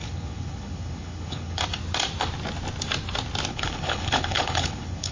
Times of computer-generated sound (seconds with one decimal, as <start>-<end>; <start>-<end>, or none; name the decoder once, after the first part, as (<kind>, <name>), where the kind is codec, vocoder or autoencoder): 0.0-1.6 (codec, HILCodec); 3.5-5.1